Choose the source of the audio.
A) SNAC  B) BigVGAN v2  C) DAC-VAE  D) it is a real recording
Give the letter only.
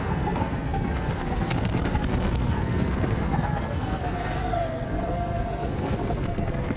A